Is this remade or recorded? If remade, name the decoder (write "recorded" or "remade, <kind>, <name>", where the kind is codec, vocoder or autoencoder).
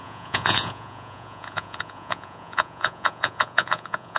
remade, vocoder, Vocos